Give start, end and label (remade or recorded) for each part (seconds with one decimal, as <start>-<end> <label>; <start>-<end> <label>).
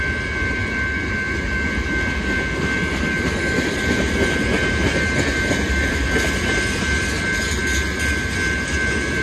0.0-9.2 recorded